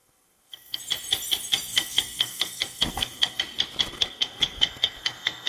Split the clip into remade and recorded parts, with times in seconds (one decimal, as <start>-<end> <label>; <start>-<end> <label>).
0.0-0.8 remade; 0.8-1.7 recorded; 1.7-3.4 remade; 3.4-3.9 recorded; 3.9-5.5 remade